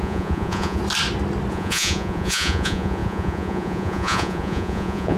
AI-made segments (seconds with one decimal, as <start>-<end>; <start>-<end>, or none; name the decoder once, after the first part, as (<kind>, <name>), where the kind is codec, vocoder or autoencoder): 0.0-0.8 (vocoder, Vocos); 1.5-5.2